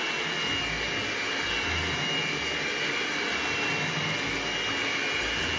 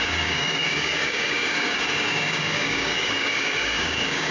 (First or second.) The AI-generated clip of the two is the second